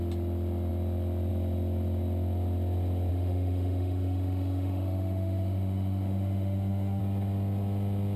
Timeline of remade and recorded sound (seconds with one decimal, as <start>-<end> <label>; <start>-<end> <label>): 0.0-3.1 recorded; 3.1-7.0 remade; 7.0-8.2 recorded